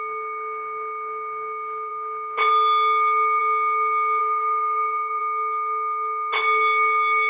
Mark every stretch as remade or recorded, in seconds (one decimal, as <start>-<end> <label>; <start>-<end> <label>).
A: 0.0-4.2 recorded; 4.2-5.2 remade; 5.2-7.3 recorded